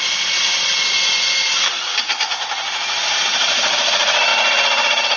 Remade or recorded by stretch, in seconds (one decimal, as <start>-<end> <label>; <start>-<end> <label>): 0.0-5.2 recorded